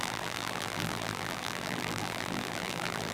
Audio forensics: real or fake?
fake